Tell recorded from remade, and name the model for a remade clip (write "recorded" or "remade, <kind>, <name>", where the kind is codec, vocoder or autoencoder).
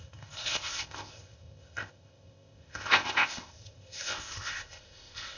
remade, codec, ZipCodec